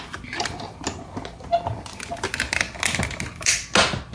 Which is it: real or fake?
real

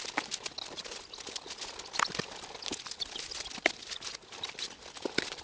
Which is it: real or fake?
real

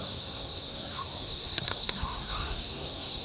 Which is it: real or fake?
fake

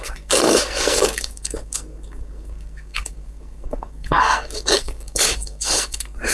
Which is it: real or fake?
fake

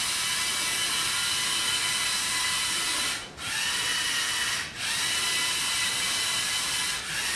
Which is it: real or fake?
real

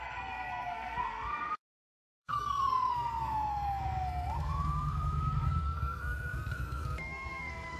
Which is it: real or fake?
fake